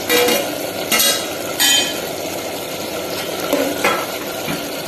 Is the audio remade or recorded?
recorded